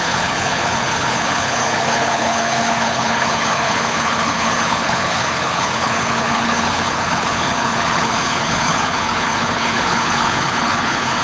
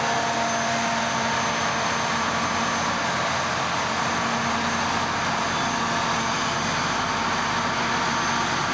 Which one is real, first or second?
second